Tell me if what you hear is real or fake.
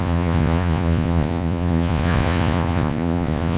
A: fake